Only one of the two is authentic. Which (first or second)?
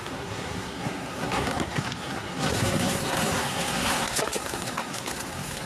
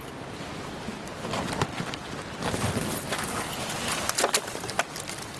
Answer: second